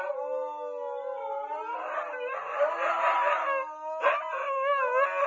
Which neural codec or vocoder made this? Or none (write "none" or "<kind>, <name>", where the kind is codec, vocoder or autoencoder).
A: none